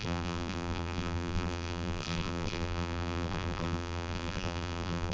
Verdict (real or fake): fake